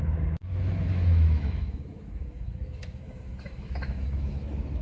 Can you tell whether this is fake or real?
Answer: fake